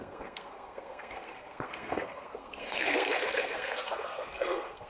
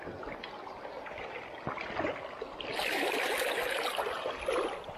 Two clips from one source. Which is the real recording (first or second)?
second